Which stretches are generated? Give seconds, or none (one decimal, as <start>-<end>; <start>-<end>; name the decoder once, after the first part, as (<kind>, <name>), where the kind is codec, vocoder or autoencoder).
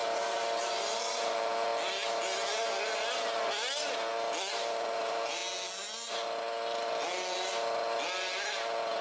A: 0.6-1.7 (vocoder, BigVGAN v2); 4.5-5.4